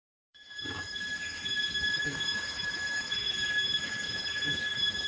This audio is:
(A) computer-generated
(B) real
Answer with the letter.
A